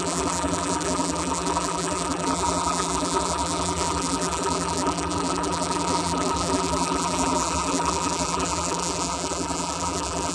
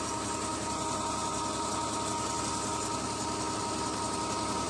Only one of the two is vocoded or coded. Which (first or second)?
first